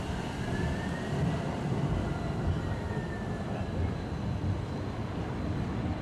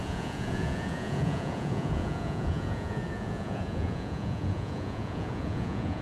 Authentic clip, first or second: first